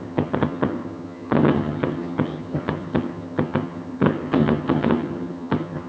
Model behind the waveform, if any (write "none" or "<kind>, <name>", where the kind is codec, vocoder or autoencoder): vocoder, HiFi-GAN